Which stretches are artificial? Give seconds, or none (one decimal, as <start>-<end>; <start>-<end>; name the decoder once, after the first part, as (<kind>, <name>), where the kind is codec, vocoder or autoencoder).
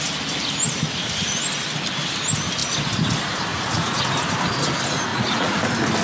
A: 3.5-4.0 (vocoder, Vocos); 5.1-5.6